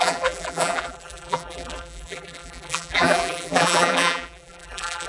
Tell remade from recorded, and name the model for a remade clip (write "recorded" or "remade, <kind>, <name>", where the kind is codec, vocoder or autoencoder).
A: remade, vocoder, BigVGAN v2